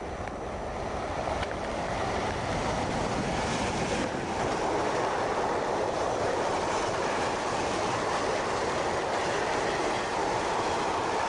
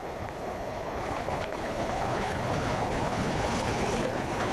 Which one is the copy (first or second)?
second